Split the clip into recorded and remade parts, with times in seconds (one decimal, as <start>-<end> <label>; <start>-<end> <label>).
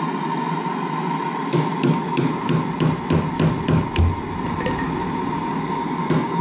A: 0.0-6.4 recorded